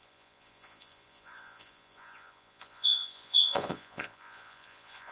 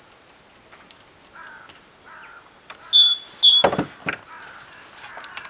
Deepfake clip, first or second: first